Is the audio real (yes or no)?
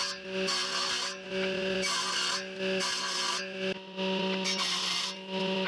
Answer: yes